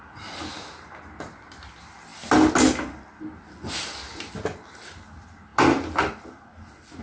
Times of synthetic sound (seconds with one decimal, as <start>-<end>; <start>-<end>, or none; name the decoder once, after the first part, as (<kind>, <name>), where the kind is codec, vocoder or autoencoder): none